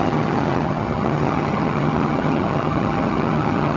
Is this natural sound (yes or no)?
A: no